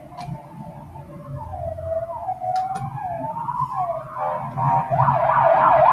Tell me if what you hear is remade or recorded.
recorded